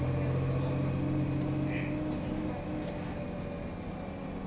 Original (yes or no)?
yes